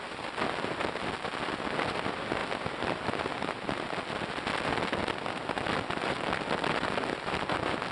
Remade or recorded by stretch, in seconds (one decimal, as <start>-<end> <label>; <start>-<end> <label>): 0.0-7.9 recorded